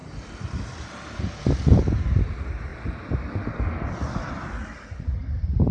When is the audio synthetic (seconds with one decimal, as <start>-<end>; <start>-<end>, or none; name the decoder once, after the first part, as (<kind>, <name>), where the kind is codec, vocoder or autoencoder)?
none